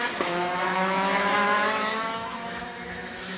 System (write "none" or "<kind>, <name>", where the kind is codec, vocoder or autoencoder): autoencoder, DAC-VAE